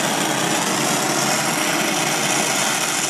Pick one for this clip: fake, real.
real